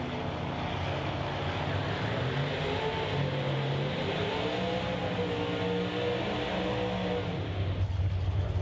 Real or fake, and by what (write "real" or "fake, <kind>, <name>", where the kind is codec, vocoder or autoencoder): real